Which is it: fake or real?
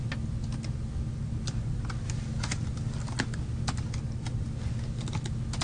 real